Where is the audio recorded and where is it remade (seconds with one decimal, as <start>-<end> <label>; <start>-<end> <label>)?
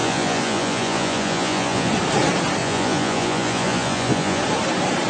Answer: 0.0-1.9 remade; 1.9-2.6 recorded; 2.6-4.4 remade; 4.4-5.1 recorded